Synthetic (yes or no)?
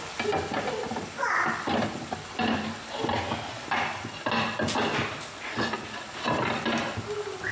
no